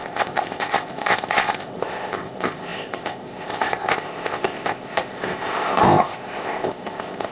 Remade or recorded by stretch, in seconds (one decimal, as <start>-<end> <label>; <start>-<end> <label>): 0.0-7.3 remade